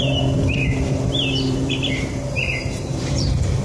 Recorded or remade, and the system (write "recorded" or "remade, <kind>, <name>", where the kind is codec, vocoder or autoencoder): remade, vocoder, BigVGAN v2